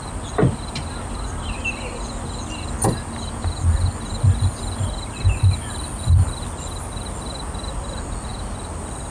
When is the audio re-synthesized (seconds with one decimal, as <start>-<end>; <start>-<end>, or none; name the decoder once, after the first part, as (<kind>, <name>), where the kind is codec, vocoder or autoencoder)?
none